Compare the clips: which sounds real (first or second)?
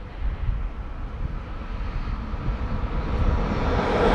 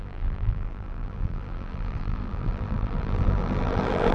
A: first